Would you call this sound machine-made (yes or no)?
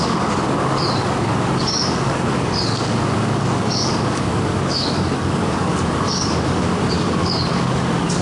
yes